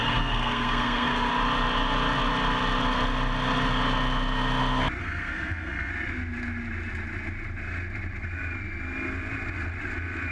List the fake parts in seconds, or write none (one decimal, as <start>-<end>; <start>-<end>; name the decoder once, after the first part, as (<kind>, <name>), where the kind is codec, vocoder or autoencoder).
0.0-1.3 (codec, SNAC); 5.0-5.9